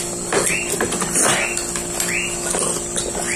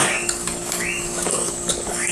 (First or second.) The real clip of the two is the first